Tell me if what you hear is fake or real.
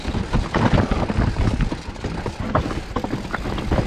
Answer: real